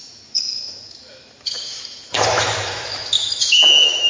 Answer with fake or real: fake